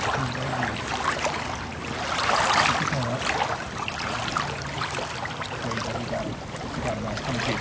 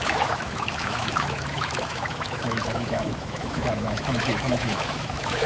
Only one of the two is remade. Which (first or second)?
second